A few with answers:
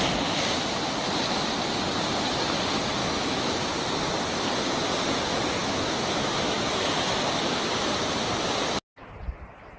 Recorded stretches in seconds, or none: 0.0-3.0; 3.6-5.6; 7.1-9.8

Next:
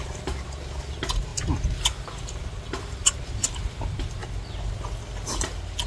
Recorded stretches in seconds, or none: 0.0-5.9